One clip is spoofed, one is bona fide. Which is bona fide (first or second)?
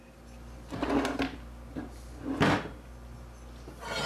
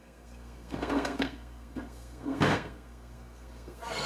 first